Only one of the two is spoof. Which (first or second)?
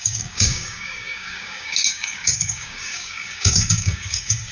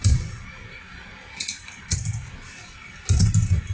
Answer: first